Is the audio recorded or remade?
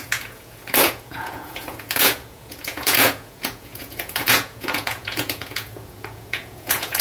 remade